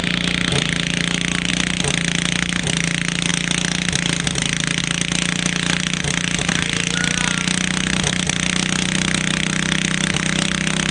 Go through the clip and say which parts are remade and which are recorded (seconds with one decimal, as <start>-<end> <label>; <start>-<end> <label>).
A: 0.0-10.9 recorded